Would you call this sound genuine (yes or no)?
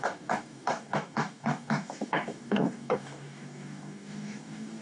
no